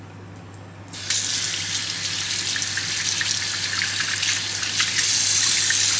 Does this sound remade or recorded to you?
recorded